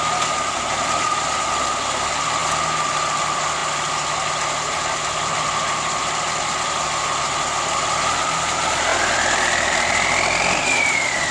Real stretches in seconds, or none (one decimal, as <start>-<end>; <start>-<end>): 0.0-11.3